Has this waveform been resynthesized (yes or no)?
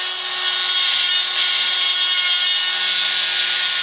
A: no